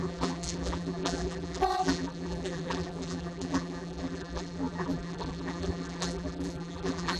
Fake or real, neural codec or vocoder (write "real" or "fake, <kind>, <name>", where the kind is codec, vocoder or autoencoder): fake, vocoder, BigVGAN v2